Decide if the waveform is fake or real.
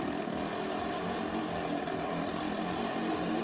real